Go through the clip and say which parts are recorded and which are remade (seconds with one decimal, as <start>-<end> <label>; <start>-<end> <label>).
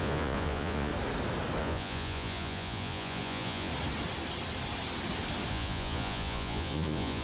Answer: 0.0-0.9 remade; 0.9-1.6 recorded; 1.6-3.7 remade; 3.7-5.5 recorded; 5.5-7.2 remade